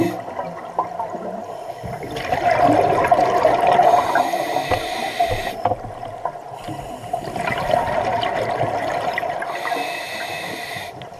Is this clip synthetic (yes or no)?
no